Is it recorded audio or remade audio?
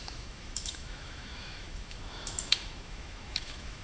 remade